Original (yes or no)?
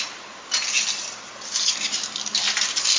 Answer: yes